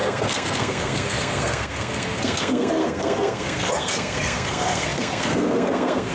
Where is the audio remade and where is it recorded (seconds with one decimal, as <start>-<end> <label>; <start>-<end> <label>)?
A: 0.0-6.1 remade

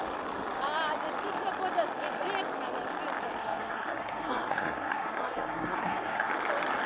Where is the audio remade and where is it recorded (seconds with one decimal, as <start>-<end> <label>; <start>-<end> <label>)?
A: 0.0-3.4 recorded; 3.4-6.3 remade; 6.3-6.9 recorded

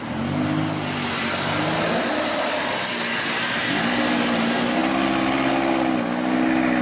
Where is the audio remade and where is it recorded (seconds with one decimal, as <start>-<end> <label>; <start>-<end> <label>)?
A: 0.0-6.8 recorded

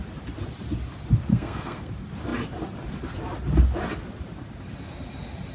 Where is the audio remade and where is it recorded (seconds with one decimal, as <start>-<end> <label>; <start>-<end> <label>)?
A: 0.0-1.3 recorded; 1.3-1.9 remade; 1.9-5.5 recorded